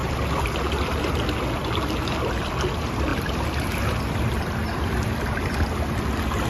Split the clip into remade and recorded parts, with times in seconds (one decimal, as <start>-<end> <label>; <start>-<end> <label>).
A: 0.0-3.1 recorded; 3.1-6.0 remade; 6.0-6.5 recorded